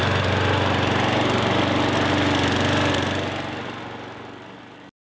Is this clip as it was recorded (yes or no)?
yes